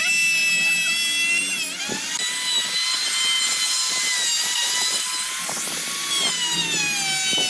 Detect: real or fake real